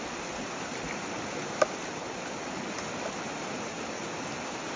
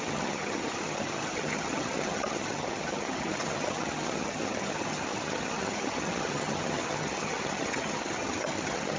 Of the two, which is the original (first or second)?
first